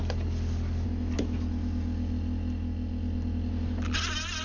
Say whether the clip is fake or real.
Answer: real